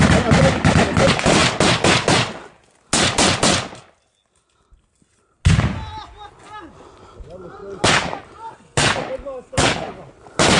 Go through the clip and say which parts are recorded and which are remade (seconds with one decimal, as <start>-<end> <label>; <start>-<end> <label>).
0.0-9.5 recorded; 9.5-10.0 remade; 10.0-10.6 recorded